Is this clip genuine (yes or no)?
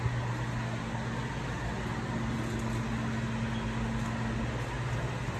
yes